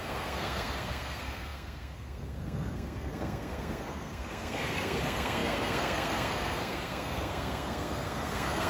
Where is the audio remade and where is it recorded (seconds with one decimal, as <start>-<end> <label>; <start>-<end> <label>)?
0.0-8.7 remade